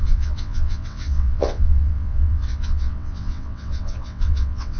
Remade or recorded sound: remade